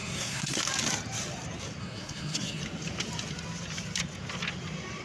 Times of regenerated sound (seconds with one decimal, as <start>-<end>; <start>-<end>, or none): 0.0-0.6; 1.8-2.6